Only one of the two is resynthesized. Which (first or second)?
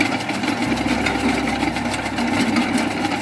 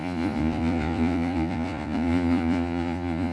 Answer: second